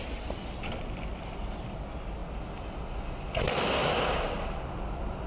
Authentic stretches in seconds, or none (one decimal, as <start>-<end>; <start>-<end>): 0.0-5.3